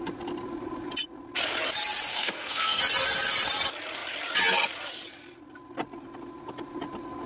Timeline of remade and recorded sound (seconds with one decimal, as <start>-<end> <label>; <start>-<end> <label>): 0.0-2.1 recorded; 2.1-2.8 remade; 2.8-7.3 recorded